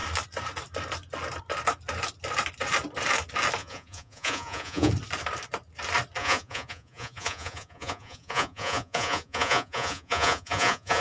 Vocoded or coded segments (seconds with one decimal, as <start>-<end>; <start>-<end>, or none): 3.6-4.9; 6.2-11.0